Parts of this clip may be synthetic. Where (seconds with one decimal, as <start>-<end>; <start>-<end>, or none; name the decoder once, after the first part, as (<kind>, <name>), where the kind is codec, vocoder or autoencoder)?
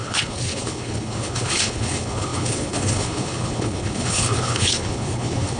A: 0.0-5.6 (codec, HILCodec)